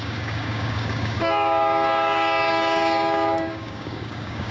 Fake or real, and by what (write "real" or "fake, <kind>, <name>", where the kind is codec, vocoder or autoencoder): fake, codec, DAC